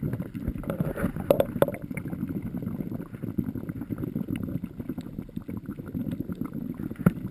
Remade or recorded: recorded